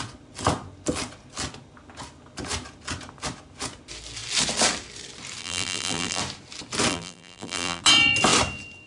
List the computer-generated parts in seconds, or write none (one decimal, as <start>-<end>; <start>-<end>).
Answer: 5.4-6.2; 6.9-7.8